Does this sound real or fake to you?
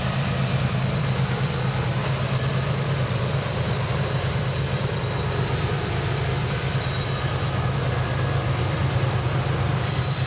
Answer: fake